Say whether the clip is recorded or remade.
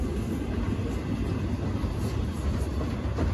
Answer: recorded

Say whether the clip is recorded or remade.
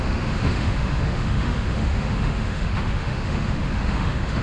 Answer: remade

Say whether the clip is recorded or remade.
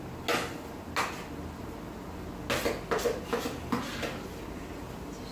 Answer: recorded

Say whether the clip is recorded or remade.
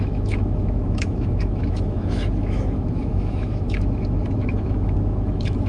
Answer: remade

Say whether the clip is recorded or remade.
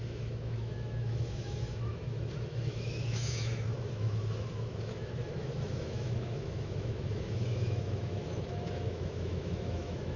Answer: remade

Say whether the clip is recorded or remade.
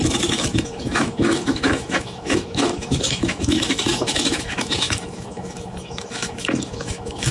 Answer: remade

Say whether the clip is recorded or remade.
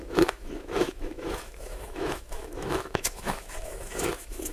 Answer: remade